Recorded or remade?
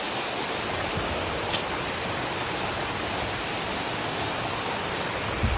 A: recorded